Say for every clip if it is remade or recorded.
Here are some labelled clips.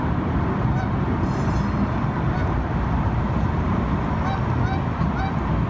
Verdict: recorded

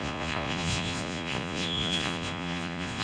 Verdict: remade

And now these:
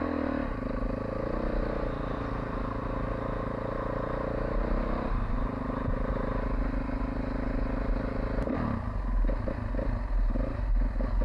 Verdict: recorded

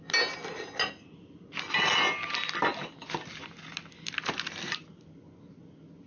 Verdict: recorded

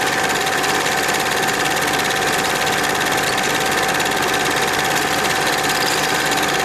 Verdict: recorded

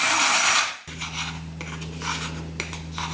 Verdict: recorded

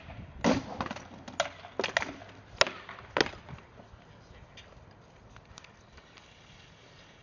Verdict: recorded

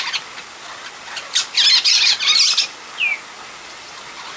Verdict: recorded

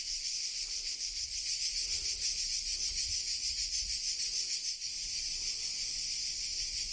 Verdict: recorded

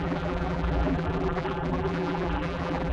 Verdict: remade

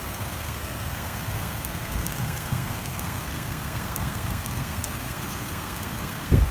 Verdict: remade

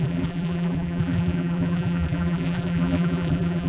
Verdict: remade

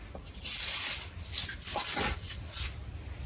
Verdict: recorded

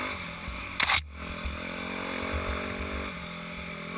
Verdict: recorded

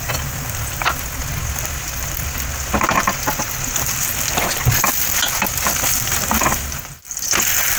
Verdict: recorded